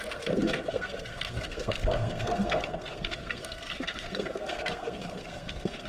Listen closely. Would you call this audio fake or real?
fake